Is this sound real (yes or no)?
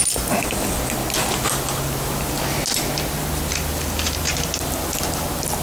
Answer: yes